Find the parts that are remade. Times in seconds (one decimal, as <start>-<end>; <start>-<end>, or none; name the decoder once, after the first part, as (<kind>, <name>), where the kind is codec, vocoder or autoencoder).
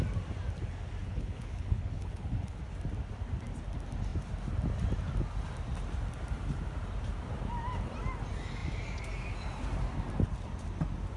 1.0-2.6 (codec, HILCodec)